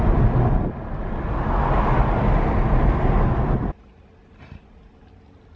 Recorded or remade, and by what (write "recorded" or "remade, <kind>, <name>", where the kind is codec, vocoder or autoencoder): recorded